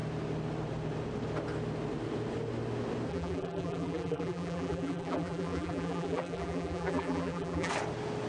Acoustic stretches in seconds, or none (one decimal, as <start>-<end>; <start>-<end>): 0.0-3.1; 7.7-8.3